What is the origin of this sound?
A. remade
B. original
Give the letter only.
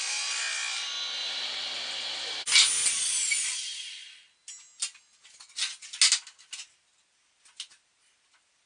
B